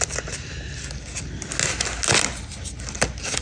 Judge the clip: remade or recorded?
recorded